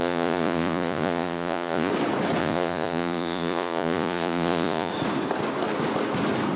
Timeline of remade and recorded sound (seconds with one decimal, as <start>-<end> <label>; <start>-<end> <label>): 0.0-1.9 remade; 1.9-2.4 recorded; 2.4-4.9 remade; 4.9-6.6 recorded

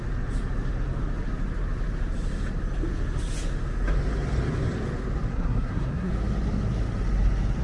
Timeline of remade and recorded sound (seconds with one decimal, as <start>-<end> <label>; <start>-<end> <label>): 0.0-5.3 recorded; 5.3-6.1 remade; 6.1-7.6 recorded